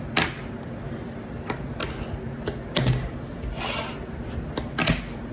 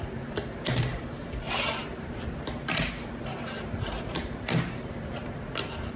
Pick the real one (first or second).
first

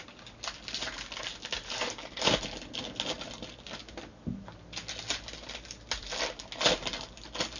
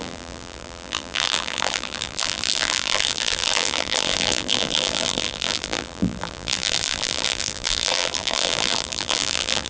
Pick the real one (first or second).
first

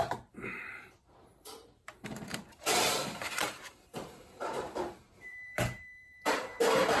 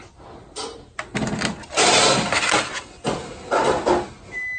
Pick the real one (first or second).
second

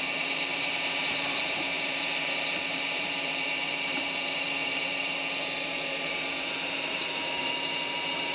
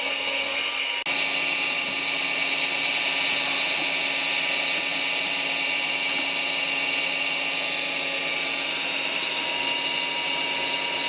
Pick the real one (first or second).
second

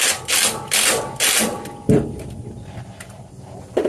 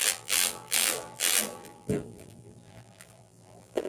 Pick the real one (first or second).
first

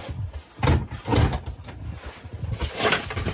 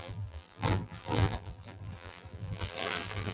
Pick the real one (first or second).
first